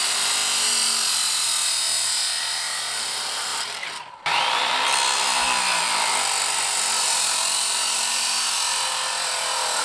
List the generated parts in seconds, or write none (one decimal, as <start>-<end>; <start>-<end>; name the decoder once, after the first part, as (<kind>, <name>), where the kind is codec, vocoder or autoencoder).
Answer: 0.0-0.4 (vocoder, BigVGAN v2); 2.4-9.8

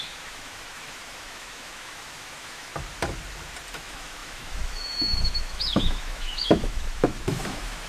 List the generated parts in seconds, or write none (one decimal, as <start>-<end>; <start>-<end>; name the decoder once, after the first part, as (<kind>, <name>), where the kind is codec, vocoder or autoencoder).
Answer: 0.0-2.7 (autoencoder, DAC-VAE); 3.7-7.9